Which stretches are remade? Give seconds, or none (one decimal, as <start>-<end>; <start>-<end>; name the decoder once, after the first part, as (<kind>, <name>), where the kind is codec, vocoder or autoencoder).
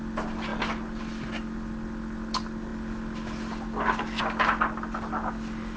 none